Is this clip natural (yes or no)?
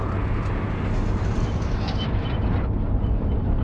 no